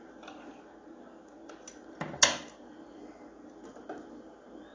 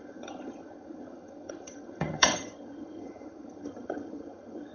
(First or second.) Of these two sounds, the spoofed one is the second